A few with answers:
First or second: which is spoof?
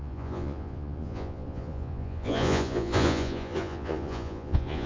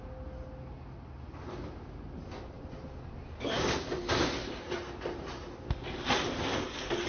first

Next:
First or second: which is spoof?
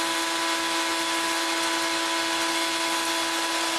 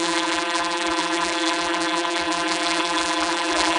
second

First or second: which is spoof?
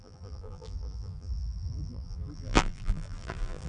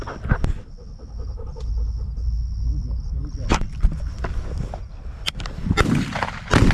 first